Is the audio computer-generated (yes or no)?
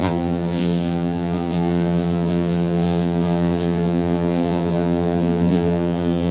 yes